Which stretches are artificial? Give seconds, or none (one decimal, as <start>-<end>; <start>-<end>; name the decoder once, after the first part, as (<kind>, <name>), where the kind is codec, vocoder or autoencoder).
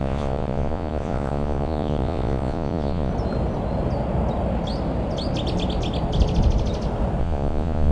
0.0-3.1 (vocoder, Vocos); 7.2-7.9